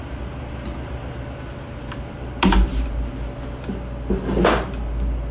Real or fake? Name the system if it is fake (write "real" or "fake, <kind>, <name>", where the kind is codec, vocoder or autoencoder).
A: real